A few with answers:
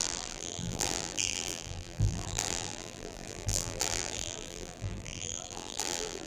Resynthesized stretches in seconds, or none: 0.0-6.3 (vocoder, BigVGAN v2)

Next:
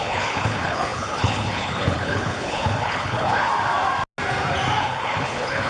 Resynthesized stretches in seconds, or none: 0.0-3.5 (codec, HILCodec); 4.8-5.7

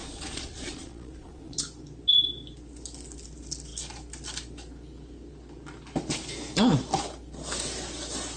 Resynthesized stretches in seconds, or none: 0.0-1.6 (vocoder, Vocos)

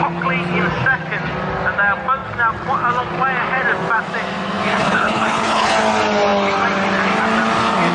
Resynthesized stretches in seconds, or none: 4.7-5.7 (codec, HILCodec)